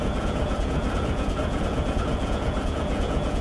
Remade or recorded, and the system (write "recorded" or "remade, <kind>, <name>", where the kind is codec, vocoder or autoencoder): remade, vocoder, Vocos